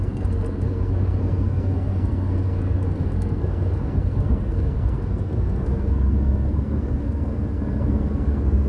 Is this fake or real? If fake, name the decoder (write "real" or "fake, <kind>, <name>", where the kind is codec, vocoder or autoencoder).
fake, codec, SNAC